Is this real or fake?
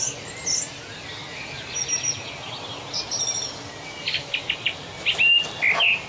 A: real